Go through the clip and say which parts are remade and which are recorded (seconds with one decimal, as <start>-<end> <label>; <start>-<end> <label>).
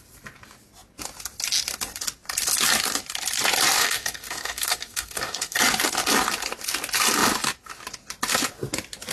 0.0-3.8 recorded; 3.8-5.6 remade; 5.6-9.1 recorded